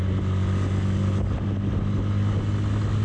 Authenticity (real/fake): real